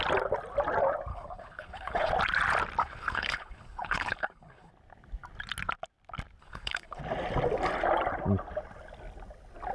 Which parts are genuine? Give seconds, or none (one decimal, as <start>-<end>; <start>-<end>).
0.0-1.1; 2.1-2.8; 4.7-6.4; 7.0-9.7